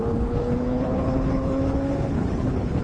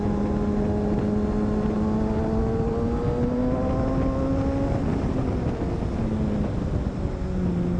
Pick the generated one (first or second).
first